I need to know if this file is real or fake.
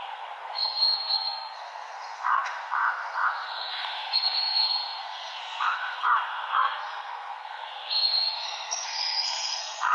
fake